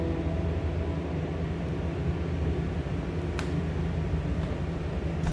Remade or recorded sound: recorded